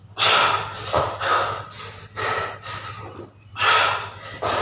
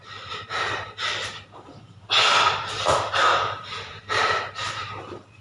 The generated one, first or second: second